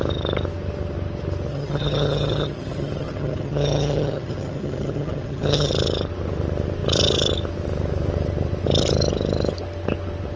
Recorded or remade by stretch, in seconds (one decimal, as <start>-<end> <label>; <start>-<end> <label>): 0.0-1.5 recorded; 1.5-5.7 remade; 5.7-10.4 recorded